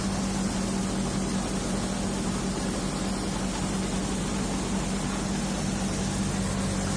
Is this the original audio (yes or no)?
yes